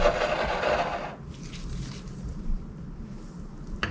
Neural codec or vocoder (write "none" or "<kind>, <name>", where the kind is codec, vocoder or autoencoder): none